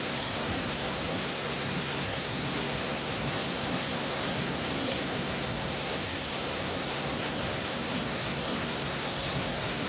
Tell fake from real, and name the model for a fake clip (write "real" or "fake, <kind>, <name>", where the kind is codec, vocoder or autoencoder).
fake, codec, SNAC